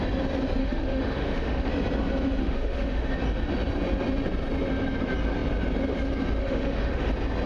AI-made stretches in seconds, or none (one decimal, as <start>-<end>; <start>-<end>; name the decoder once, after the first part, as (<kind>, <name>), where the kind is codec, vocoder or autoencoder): 0.6-1.7 (autoencoder, DAC-VAE); 2.4-3.1; 6.4-7.1